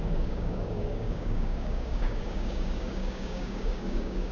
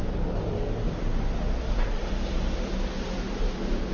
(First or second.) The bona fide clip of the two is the second